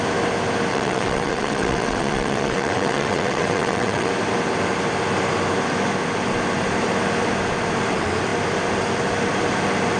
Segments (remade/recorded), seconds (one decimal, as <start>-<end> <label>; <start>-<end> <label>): 0.0-0.7 recorded; 0.7-4.1 remade; 4.1-10.0 recorded

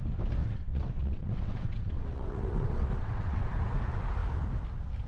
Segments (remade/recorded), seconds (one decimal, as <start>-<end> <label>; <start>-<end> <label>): 0.0-0.4 recorded; 0.4-3.5 remade; 3.5-5.1 recorded

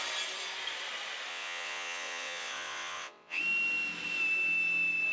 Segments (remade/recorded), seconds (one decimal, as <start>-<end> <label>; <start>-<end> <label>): 0.0-1.3 recorded; 1.3-3.4 remade; 3.4-5.1 recorded